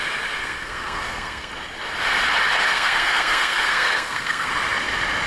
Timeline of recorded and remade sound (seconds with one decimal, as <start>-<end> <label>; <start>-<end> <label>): 0.0-0.4 recorded; 0.4-1.5 remade; 1.5-2.7 recorded; 2.7-4.5 remade; 4.5-5.3 recorded